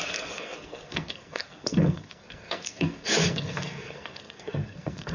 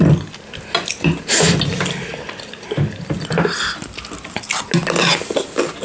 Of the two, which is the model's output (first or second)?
first